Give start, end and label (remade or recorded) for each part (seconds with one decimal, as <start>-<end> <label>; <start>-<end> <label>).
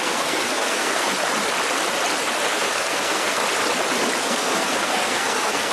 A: 0.0-1.2 remade; 1.2-2.5 recorded; 2.5-3.4 remade; 3.4-4.2 recorded; 4.2-5.7 remade